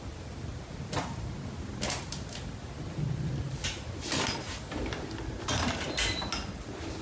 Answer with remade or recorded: recorded